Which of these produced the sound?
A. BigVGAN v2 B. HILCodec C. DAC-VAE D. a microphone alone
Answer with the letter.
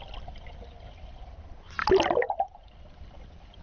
D